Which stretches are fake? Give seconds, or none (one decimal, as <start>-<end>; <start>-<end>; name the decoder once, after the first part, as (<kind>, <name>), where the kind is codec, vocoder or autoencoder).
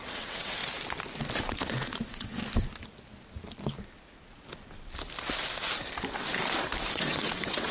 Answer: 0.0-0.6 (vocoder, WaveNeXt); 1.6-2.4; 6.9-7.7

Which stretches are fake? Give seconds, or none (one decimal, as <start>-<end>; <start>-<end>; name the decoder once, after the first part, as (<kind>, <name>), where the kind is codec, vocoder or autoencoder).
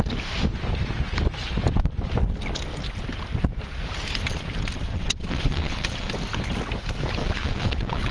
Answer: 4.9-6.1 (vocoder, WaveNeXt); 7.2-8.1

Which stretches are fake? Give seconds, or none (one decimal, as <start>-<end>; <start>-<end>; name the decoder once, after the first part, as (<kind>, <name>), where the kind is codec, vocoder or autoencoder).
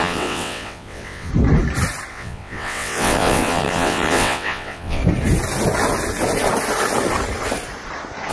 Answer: 0.0-1.3 (vocoder, WaveNeXt); 2.1-5.0